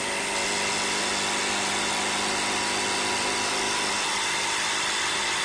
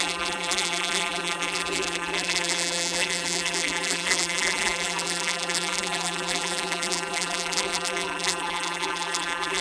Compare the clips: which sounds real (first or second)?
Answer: first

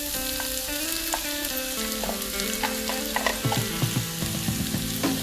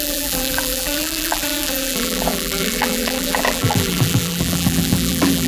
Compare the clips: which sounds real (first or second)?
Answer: first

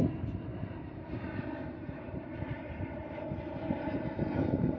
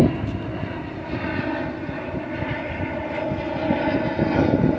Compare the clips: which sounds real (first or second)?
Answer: second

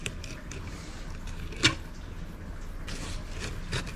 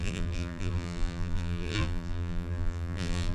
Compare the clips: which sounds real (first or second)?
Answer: first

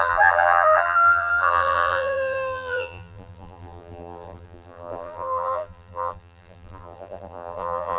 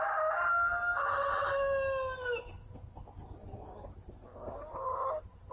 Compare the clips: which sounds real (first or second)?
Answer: second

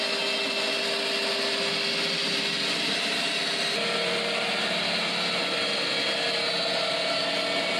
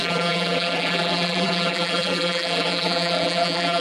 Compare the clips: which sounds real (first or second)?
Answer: first